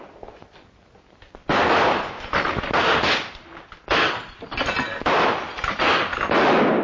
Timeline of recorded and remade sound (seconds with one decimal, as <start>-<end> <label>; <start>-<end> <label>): 0.0-1.4 recorded; 1.4-2.9 remade; 2.9-4.9 recorded; 4.9-5.8 remade; 5.8-6.8 recorded